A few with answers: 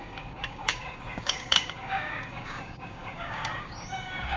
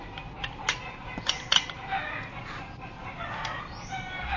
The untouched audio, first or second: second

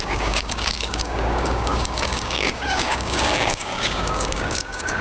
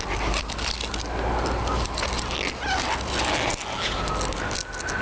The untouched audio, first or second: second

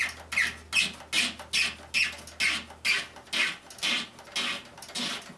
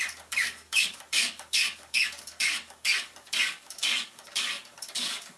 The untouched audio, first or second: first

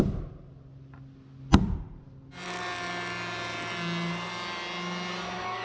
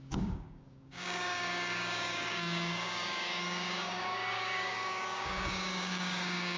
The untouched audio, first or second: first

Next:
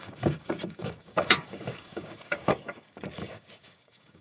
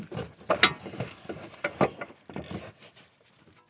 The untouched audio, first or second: second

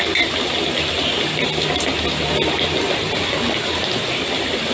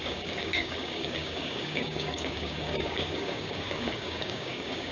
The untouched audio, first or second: first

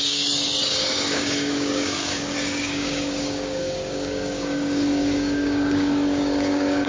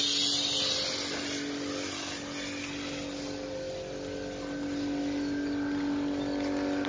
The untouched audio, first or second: second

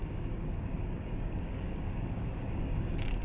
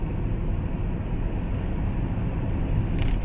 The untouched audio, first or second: second